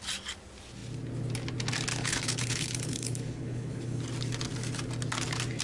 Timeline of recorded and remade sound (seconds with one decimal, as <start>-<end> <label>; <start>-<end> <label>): 0.0-1.9 recorded; 1.9-4.0 remade; 4.0-5.6 recorded